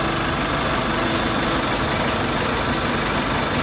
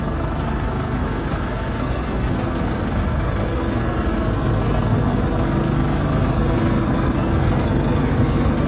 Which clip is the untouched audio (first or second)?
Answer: first